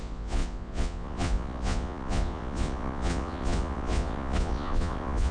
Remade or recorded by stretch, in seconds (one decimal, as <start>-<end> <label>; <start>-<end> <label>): 0.0-5.3 remade